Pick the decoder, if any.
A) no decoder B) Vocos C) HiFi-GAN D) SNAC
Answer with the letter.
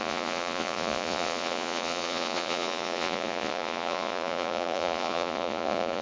B